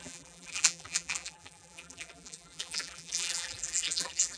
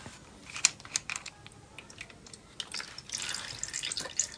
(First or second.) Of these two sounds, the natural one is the second